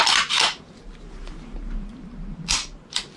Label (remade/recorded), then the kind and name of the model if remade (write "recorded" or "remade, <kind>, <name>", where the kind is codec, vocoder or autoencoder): recorded